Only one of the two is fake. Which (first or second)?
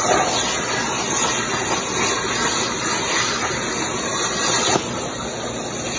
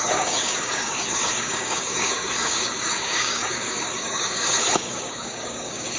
second